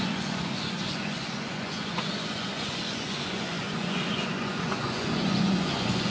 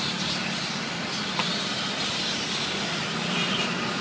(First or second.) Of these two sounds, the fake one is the first